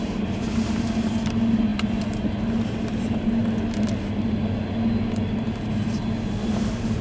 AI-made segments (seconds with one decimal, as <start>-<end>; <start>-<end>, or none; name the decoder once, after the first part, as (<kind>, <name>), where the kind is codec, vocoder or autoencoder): none